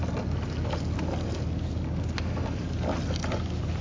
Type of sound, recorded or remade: recorded